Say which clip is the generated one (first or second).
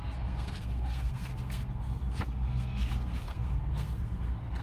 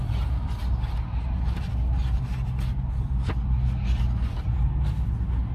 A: first